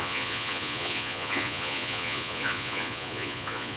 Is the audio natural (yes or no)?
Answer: no